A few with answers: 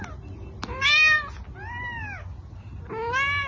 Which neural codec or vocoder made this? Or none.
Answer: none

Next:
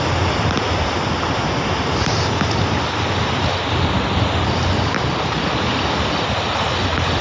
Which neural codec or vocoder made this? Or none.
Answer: none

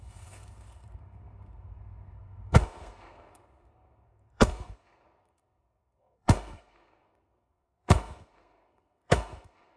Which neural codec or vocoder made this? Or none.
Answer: codec, SNAC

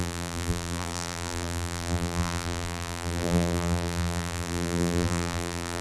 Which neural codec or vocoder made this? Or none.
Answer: vocoder, BigVGAN v2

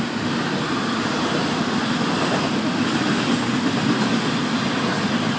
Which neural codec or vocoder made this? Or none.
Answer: none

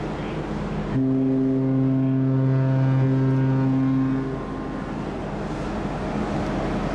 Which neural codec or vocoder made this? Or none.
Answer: none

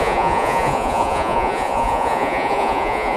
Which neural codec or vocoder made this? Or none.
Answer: vocoder, Vocos